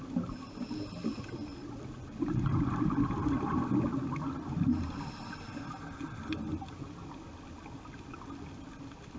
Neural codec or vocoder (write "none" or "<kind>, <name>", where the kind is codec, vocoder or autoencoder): none